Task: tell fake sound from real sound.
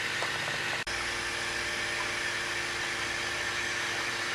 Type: real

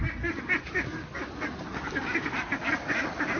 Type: real